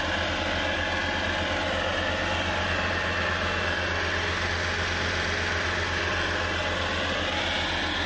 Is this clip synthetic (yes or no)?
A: no